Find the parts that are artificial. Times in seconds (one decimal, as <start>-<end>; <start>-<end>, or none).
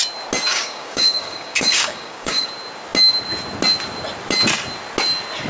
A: 0.5-2.5